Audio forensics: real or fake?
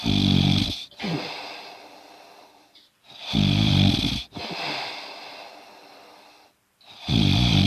fake